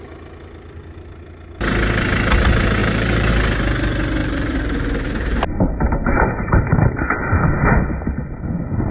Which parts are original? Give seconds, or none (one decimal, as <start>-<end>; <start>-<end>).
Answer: 0.0-2.8; 3.3-4.2; 6.6-8.9